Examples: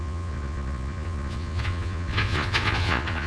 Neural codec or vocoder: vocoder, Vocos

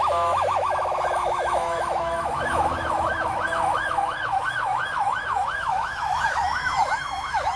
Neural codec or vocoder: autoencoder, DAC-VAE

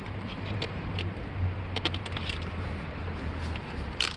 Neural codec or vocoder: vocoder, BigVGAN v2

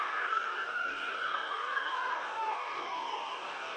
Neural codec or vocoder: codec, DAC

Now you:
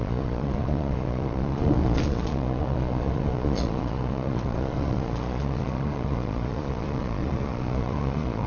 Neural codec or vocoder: vocoder, Vocos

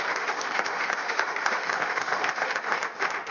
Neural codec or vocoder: autoencoder, DAC-VAE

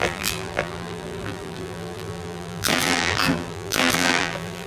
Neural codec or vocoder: vocoder, BigVGAN v2